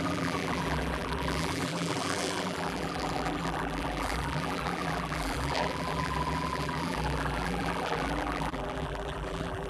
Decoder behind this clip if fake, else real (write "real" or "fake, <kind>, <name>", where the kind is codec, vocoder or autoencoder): fake, vocoder, BigVGAN v2